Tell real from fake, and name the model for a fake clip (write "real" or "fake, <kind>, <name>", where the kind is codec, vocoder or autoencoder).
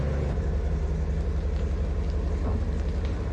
real